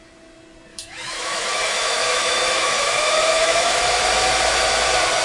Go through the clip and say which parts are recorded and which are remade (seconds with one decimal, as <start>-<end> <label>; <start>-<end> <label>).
0.0-0.7 recorded; 0.7-3.8 remade; 3.8-5.2 recorded

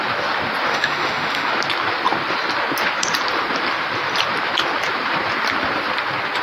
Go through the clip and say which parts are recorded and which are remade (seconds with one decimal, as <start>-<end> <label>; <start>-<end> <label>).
0.0-0.7 recorded; 0.7-1.5 remade; 1.5-6.4 recorded

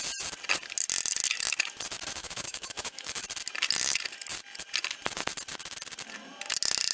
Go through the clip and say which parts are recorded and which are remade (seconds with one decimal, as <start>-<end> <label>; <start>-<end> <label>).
0.0-2.2 recorded; 2.2-3.2 remade; 3.2-6.9 recorded

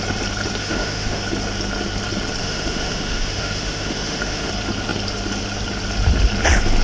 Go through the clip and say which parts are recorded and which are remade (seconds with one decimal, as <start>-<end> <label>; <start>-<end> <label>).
0.0-0.6 recorded; 0.6-1.2 remade; 1.2-2.4 recorded; 2.4-4.5 remade; 4.5-6.8 recorded

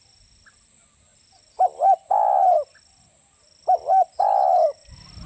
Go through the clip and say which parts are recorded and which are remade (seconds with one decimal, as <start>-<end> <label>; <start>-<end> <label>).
0.0-5.3 recorded

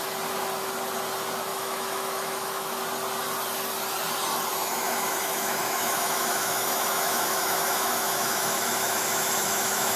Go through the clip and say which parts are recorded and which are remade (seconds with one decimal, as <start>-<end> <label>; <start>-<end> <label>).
0.0-1.5 recorded; 1.5-2.8 remade; 2.8-4.5 recorded; 4.5-10.0 remade

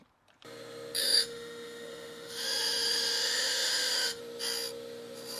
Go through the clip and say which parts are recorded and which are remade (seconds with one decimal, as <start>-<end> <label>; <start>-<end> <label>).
0.0-1.0 recorded; 1.0-4.2 remade; 4.2-5.4 recorded

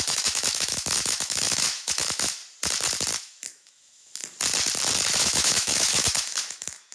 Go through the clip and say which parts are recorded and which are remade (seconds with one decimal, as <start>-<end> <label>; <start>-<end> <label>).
0.0-2.4 remade; 2.4-3.2 recorded; 3.2-4.2 remade; 4.2-5.2 recorded; 5.2-6.9 remade